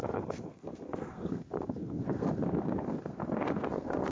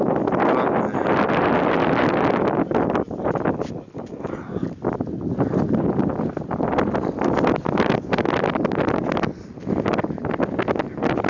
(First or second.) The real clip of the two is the second